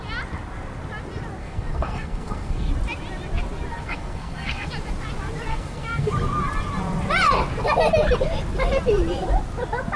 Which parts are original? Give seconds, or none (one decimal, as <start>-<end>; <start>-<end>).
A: 0.0-1.4; 2.7-3.7; 4.7-5.5; 6.1-10.0